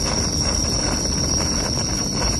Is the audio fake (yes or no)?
no